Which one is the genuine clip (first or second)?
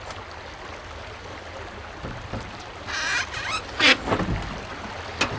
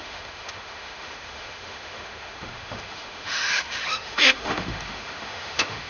first